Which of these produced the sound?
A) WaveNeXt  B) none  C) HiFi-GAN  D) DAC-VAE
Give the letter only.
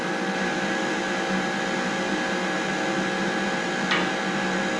B